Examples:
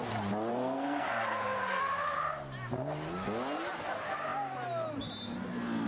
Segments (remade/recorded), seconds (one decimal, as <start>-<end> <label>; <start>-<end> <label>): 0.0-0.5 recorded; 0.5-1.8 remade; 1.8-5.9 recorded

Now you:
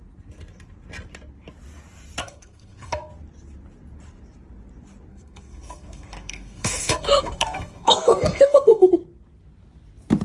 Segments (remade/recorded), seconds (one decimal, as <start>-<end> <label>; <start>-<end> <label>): 0.0-2.2 recorded; 2.2-3.1 remade; 3.1-5.1 recorded; 5.1-8.9 remade; 8.9-10.2 recorded

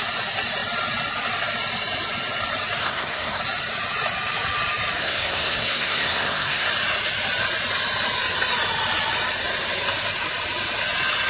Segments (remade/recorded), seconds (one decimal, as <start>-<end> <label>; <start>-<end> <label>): 0.0-2.8 recorded; 2.8-3.4 remade; 3.4-5.0 recorded; 5.0-6.7 remade; 6.7-11.3 recorded

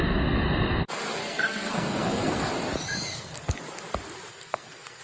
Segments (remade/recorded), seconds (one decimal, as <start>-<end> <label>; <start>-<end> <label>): 0.0-1.2 recorded; 1.2-2.5 remade; 2.5-3.1 recorded; 3.1-3.6 remade; 3.6-4.3 recorded; 4.3-5.0 remade